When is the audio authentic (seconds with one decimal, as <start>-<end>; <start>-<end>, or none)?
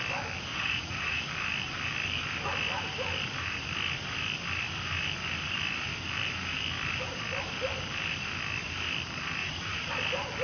0.0-0.5; 1.2-9.4; 9.9-10.4